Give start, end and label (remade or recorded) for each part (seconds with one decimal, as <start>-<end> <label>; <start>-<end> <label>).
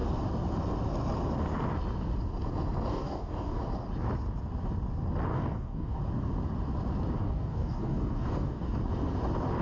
0.0-2.9 recorded; 2.9-3.6 remade; 3.6-5.3 recorded; 5.3-6.0 remade; 6.0-7.2 recorded; 7.2-8.8 remade; 8.8-9.6 recorded